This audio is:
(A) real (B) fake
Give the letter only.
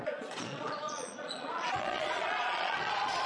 B